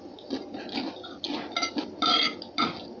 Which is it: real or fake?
real